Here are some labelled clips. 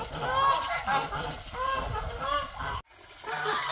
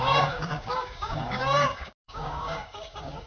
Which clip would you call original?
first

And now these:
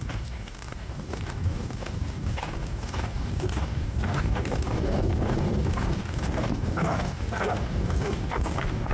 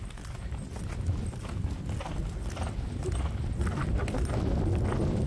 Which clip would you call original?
second